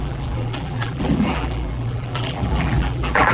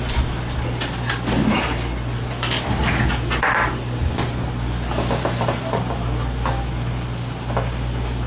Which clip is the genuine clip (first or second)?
second